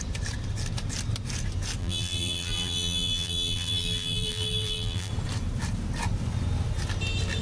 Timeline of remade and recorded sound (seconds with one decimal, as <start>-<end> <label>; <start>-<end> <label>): 0.0-1.8 recorded; 1.8-5.1 remade; 5.1-7.4 recorded